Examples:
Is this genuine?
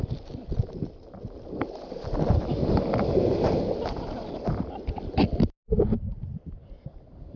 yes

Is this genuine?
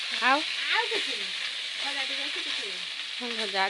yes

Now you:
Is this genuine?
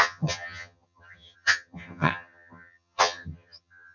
no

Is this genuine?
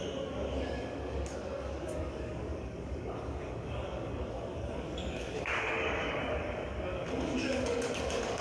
no